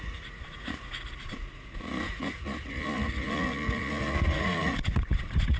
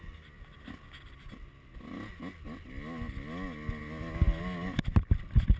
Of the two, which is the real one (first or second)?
second